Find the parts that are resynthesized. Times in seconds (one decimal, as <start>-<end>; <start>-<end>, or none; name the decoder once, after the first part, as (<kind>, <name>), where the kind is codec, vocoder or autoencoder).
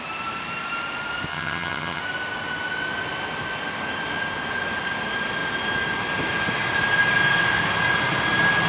1.3-2.0 (vocoder, HiFi-GAN)